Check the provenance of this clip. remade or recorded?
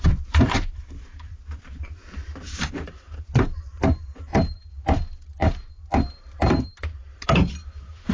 remade